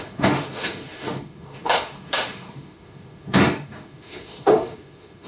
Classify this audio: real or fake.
fake